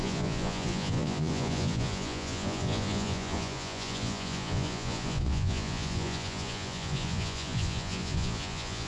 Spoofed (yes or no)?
yes